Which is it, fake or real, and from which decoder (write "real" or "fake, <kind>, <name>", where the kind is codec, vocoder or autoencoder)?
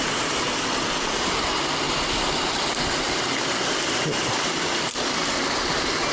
real